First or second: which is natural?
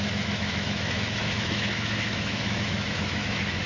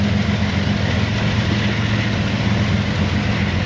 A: second